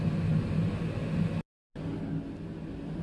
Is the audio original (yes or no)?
yes